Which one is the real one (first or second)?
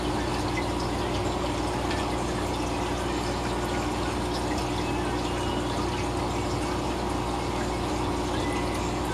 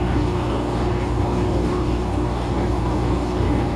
first